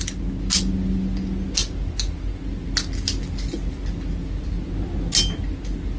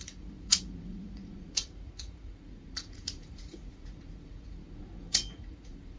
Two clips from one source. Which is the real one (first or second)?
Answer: first